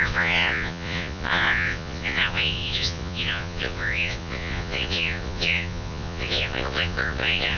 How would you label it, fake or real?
fake